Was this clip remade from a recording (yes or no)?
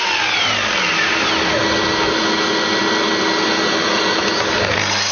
no